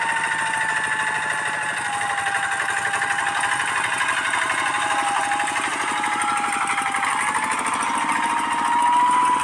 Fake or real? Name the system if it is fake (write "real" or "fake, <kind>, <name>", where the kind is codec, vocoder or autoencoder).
real